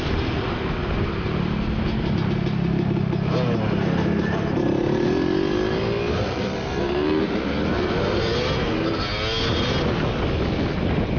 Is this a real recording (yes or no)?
yes